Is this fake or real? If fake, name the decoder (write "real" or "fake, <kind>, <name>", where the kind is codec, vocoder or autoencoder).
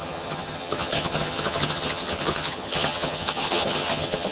fake, vocoder, HiFi-GAN